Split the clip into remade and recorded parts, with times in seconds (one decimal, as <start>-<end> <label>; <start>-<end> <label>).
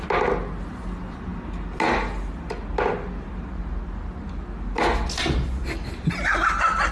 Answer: 0.0-6.9 recorded